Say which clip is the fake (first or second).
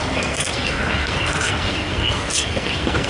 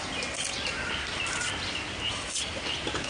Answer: first